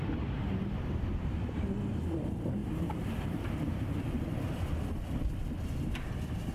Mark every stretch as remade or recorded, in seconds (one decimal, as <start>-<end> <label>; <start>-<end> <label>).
0.0-2.6 recorded; 2.6-4.0 remade; 4.0-6.5 recorded